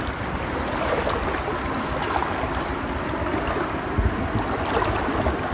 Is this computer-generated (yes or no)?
no